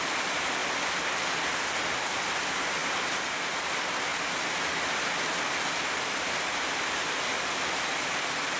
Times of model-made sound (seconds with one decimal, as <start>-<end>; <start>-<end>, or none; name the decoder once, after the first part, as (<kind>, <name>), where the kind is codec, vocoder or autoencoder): none